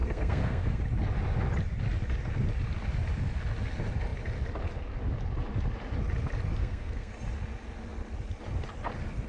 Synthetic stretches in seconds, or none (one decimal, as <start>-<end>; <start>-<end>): 0.0-0.8; 6.6-7.1